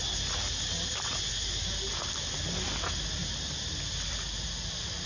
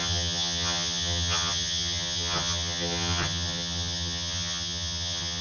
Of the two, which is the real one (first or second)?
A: first